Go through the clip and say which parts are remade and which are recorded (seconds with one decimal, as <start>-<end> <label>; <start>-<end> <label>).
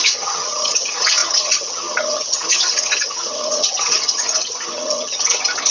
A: 0.0-5.7 remade